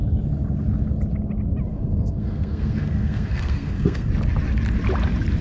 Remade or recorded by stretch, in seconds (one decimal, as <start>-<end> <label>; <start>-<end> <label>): 0.0-1.7 recorded; 1.7-4.1 remade; 4.1-5.4 recorded